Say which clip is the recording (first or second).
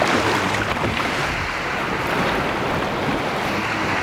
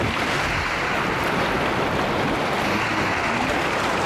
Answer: second